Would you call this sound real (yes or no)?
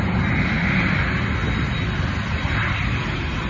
yes